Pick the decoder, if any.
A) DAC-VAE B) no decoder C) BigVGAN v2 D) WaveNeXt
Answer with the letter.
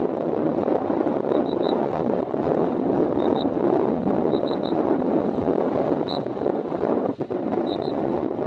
D